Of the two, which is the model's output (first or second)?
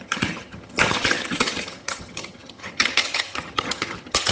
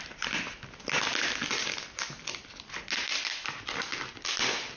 first